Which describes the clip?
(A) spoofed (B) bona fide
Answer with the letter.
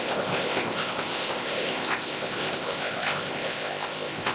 A